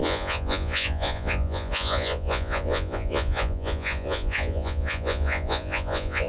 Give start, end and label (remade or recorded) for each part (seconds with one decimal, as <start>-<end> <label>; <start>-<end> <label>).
0.0-6.3 remade